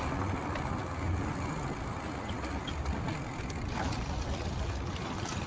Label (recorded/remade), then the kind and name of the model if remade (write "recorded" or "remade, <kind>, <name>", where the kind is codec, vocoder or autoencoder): recorded